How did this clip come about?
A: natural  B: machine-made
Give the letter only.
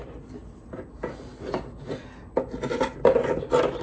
A